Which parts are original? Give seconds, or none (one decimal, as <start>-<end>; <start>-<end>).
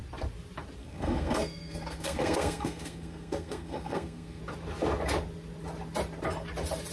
0.0-0.8; 4.4-6.9